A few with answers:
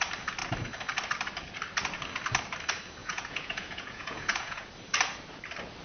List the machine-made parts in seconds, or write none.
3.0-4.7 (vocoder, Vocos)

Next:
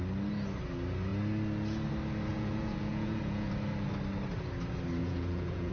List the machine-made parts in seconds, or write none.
2.3-3.5 (vocoder, Vocos); 5.0-5.7

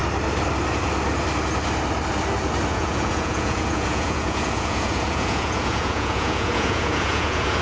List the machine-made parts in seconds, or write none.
2.7-7.6 (vocoder, Vocos)

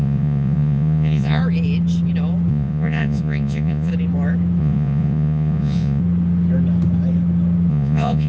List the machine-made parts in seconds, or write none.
0.0-1.4 (vocoder, Vocos); 2.5-3.9; 4.6-6.0; 7.7-8.3